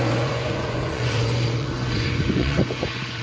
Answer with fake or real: fake